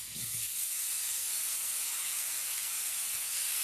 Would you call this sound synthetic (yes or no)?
yes